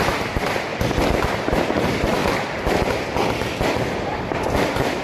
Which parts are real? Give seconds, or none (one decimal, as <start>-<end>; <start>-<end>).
0.7-1.3; 2.2-4.6